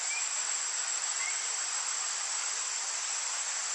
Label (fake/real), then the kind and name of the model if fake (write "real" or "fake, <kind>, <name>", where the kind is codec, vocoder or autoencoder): fake, vocoder, BigVGAN v2